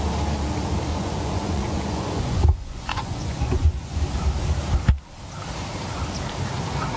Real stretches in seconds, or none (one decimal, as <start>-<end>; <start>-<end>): 0.0-0.9; 4.0-7.0